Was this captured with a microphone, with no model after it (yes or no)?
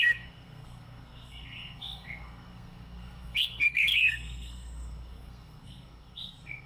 no